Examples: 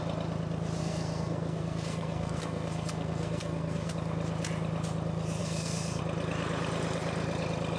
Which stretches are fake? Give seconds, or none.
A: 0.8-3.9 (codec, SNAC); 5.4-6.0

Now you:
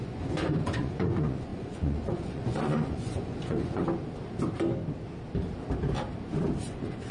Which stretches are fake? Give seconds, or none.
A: 0.0-3.8 (vocoder, Vocos); 6.6-7.1